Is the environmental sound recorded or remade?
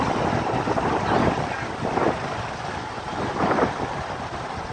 recorded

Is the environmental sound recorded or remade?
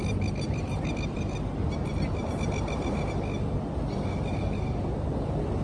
recorded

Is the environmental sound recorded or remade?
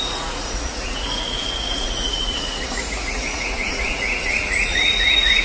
remade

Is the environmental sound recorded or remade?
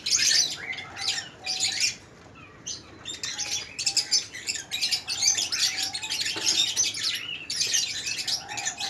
recorded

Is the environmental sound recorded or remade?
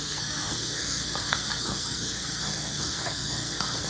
remade